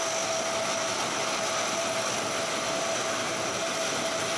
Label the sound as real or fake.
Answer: real